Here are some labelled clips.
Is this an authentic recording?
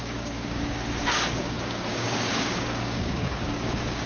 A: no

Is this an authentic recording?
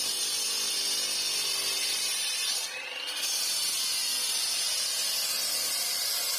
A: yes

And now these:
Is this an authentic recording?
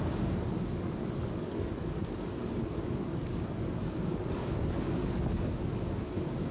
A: no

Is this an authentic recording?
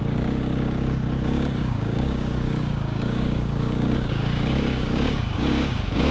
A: no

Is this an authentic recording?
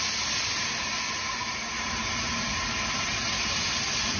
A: yes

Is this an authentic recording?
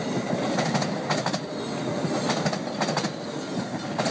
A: yes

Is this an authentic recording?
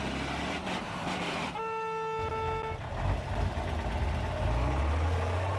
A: yes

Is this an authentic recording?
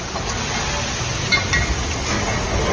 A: yes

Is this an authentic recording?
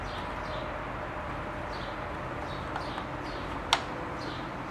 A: yes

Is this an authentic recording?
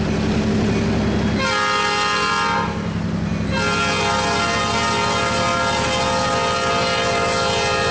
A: yes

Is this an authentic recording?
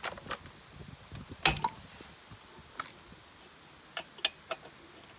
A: yes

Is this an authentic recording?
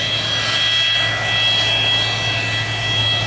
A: yes